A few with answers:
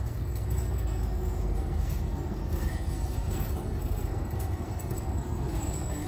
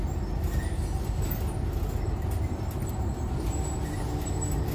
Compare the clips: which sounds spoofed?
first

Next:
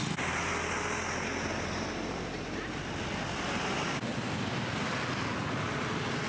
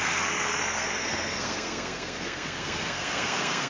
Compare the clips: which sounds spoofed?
second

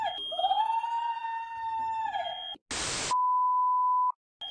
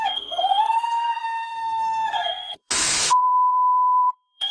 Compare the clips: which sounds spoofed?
second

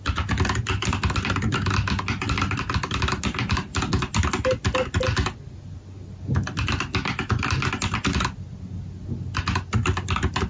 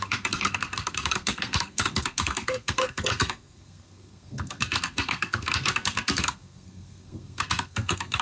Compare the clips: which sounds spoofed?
second